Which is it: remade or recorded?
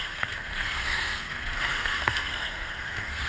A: remade